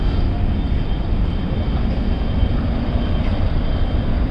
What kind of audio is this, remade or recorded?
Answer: recorded